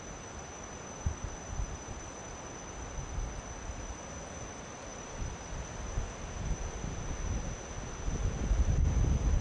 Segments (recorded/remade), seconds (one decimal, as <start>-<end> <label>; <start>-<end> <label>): 0.0-4.9 recorded; 4.9-6.0 remade; 6.0-9.4 recorded